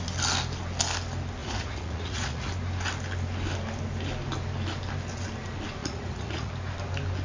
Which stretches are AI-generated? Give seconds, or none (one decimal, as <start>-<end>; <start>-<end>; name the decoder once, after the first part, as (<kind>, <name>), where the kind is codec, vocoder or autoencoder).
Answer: 1.4-2.5 (vocoder, Vocos); 5.8-6.5